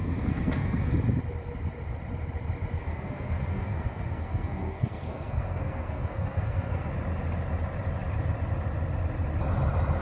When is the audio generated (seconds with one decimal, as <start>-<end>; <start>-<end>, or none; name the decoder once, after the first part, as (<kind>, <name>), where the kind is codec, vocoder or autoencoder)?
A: 0.0-0.9 (codec, SNAC); 2.8-6.9